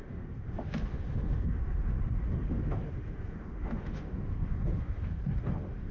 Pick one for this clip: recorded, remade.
remade